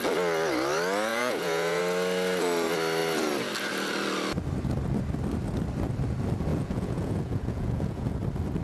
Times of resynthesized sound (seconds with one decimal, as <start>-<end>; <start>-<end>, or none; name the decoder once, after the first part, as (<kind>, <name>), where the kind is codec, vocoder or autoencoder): 1.1-1.8 (vocoder, Vocos); 6.5-8.2